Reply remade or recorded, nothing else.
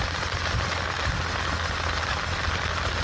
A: recorded